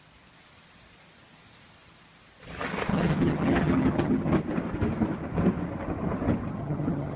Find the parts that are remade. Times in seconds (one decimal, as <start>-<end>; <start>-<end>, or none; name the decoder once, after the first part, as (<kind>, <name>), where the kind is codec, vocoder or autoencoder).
2.9-4.3 (vocoder, HiFi-GAN); 6.5-7.2